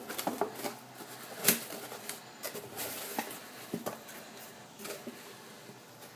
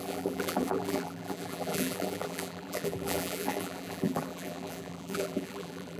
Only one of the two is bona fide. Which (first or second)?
first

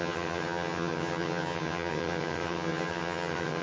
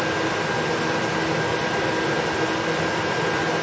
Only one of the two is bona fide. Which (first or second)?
second